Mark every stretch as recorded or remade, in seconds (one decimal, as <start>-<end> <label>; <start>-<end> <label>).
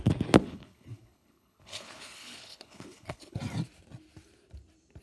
0.0-0.4 recorded; 0.4-3.4 remade; 3.4-5.0 recorded